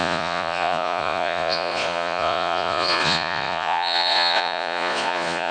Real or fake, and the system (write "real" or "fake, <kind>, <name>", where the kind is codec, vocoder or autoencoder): fake, vocoder, Vocos